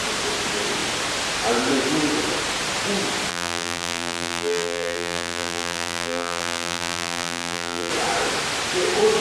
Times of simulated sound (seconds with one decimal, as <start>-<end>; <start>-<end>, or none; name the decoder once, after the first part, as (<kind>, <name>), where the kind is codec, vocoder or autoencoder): 3.3-7.9 (vocoder, BigVGAN v2)